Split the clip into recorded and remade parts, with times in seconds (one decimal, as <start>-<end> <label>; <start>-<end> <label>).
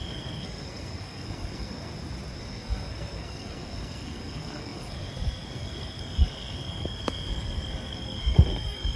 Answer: 0.0-1.9 remade; 1.9-2.4 recorded; 2.4-9.0 remade